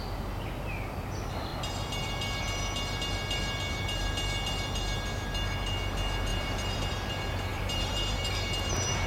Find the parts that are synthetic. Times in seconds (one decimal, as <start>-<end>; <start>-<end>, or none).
6.3-6.9; 7.5-8.3

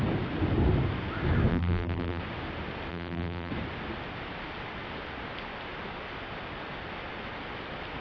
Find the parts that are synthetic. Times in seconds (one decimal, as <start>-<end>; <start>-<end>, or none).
1.5-2.2; 2.9-3.5

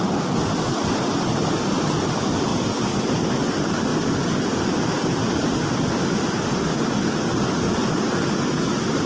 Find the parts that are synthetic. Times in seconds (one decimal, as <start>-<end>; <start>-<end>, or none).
none

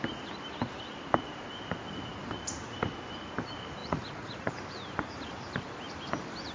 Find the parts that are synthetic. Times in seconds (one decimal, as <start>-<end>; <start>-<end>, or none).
3.8-4.5